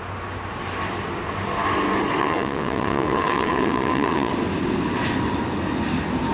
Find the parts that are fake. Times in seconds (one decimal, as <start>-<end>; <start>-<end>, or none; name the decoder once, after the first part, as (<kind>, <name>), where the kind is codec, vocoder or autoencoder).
2.2-4.3 (vocoder, WaveNeXt)

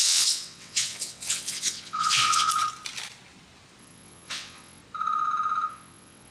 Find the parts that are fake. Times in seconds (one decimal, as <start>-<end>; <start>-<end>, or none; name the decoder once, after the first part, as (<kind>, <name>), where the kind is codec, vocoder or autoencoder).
0.0-2.5 (vocoder, WaveNeXt); 3.8-4.8; 5.7-6.3

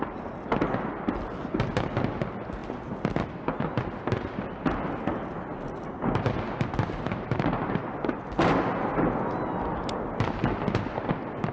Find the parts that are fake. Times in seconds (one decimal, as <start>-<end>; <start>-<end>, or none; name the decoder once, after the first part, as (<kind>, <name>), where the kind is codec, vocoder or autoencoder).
none

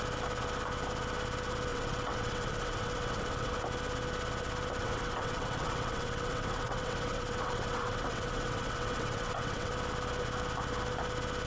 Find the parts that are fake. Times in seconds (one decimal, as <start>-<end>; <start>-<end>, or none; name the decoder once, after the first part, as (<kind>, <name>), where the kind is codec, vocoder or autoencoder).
1.7-3.5 (vocoder, WaveNeXt); 4.8-9.7

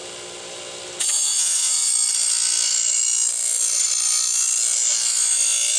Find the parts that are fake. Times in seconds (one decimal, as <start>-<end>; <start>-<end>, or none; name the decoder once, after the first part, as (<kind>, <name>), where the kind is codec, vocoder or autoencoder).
1.0-1.9 (vocoder, WaveNeXt)

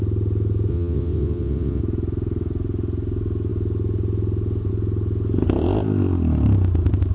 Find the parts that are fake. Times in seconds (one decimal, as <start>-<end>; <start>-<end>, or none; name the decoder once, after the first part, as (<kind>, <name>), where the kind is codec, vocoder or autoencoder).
0.7-1.8 (vocoder, WaveNeXt)

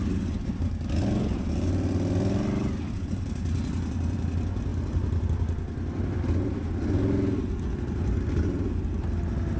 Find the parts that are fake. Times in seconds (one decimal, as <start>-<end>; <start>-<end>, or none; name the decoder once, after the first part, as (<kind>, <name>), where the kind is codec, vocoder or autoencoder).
none

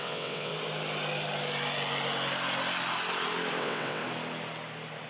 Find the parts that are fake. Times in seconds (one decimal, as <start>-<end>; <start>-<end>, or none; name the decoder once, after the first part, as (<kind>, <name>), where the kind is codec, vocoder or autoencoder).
0.0-0.5 (vocoder, WaveNeXt); 3.6-4.0